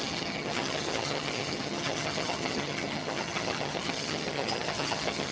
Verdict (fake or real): fake